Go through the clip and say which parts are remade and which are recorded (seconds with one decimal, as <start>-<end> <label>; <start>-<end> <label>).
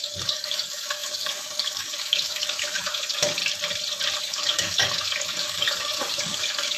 0.0-3.4 remade; 3.4-4.2 recorded; 4.2-6.8 remade